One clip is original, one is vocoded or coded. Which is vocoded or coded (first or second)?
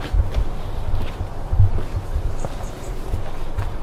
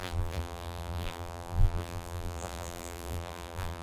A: second